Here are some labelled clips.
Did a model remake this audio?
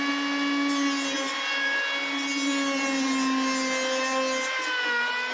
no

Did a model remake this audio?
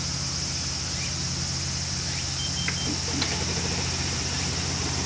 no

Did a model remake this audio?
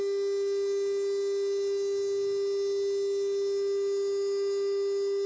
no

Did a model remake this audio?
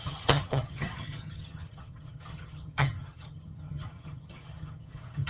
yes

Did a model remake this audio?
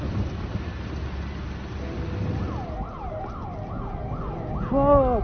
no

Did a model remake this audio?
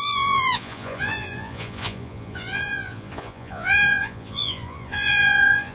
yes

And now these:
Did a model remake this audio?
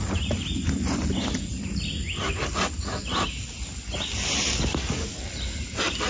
no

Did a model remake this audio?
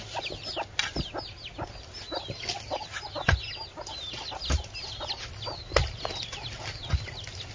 no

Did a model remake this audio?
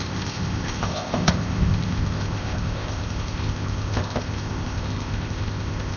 yes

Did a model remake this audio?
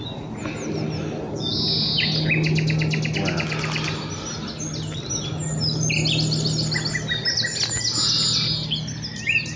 no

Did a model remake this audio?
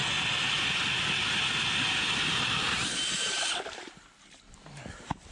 no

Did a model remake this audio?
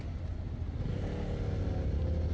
no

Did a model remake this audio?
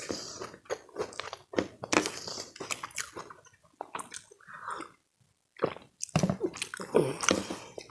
no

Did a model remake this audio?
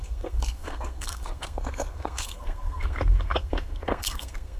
yes